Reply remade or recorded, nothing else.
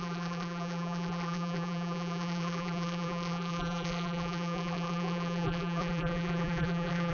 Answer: remade